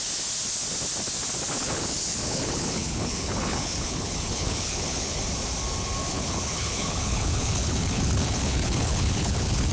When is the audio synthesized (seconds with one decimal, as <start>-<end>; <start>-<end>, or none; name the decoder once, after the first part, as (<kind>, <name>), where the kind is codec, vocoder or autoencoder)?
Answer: 1.6-5.2 (codec, HILCodec); 6.1-9.7